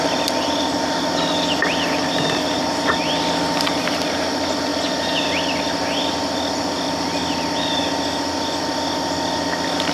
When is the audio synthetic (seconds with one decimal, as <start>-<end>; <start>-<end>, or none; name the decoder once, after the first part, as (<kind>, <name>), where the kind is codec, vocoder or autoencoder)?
0.0-9.9 (vocoder, BigVGAN v2)